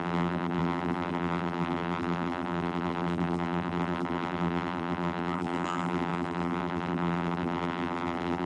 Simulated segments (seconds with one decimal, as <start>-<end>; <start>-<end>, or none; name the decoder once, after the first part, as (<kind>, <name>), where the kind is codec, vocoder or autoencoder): 0.0-8.4 (vocoder, BigVGAN v2)